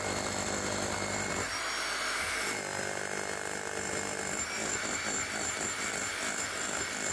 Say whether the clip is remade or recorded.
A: recorded